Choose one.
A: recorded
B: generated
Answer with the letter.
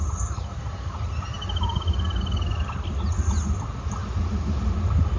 A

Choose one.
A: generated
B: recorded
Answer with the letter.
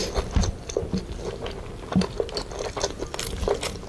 B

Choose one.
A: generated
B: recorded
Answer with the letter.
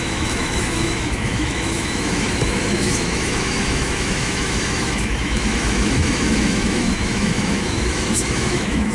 A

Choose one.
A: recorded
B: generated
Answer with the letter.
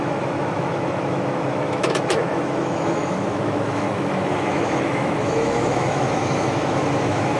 B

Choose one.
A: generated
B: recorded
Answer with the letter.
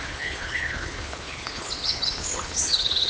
A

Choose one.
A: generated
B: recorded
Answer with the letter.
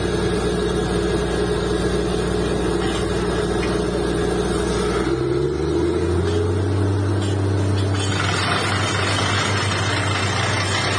B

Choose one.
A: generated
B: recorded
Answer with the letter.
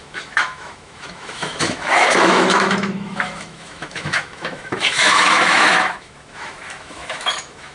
A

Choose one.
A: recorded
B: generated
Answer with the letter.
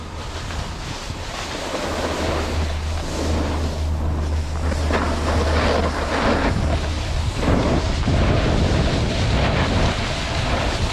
A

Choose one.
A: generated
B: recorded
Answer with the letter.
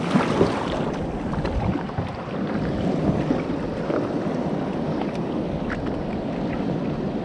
B